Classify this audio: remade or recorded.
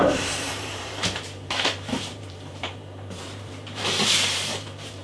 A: remade